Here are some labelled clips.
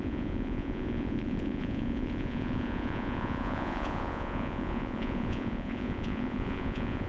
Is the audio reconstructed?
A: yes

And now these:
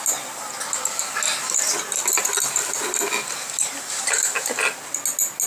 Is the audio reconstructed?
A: no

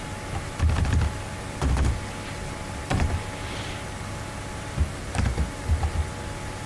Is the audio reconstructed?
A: no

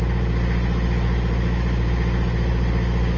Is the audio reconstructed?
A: no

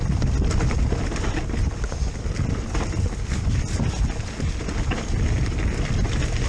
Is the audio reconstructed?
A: no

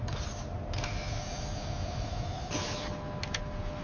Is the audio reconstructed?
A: no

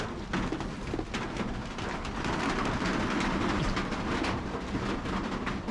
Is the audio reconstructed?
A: no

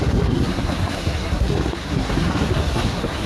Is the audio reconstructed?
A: yes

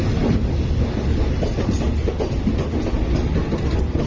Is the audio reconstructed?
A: no